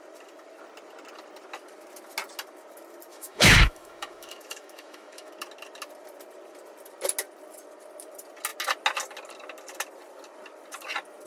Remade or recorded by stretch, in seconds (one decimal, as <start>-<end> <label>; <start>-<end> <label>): 0.0-3.1 recorded; 3.1-5.3 remade; 5.3-11.3 recorded